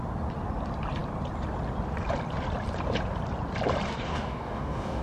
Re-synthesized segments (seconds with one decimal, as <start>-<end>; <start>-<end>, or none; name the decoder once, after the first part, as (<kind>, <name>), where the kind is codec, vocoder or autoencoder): 3.9-5.0 (codec, DAC)